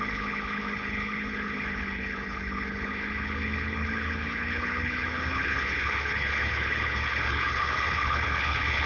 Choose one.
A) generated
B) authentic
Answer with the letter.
A